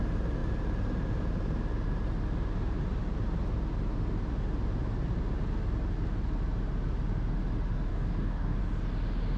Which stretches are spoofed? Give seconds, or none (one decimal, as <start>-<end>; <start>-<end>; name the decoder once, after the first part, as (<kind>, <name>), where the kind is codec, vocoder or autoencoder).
7.9-8.6 (codec, DAC)